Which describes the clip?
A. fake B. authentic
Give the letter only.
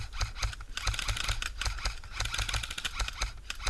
B